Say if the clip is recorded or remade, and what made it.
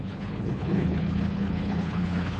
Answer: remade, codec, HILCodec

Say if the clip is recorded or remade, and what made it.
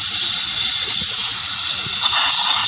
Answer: recorded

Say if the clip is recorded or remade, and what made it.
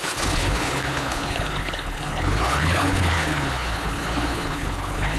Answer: remade, codec, HILCodec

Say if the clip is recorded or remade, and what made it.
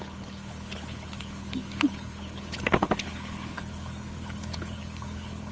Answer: remade, codec, HILCodec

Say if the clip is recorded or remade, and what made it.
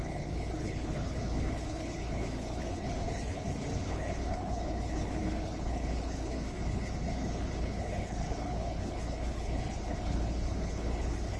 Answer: remade, codec, HILCodec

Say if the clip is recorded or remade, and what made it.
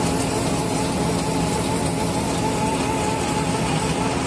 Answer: recorded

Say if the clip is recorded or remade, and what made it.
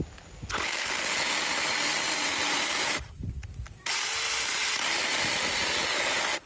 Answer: recorded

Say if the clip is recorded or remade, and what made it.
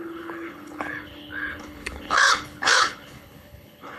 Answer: remade, codec, HILCodec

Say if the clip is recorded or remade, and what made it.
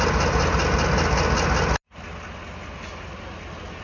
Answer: recorded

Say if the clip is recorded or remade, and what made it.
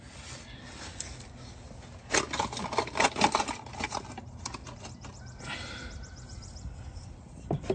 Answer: recorded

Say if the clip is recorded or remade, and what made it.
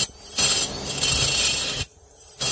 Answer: recorded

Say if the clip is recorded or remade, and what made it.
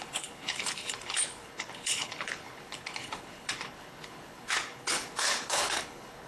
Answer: remade, codec, HILCodec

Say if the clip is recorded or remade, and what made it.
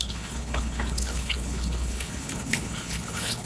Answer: remade, codec, HILCodec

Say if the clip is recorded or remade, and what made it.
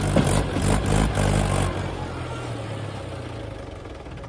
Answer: recorded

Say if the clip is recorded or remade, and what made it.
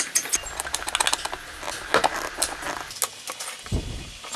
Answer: recorded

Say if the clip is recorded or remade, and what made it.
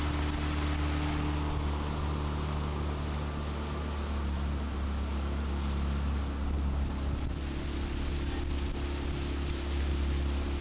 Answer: recorded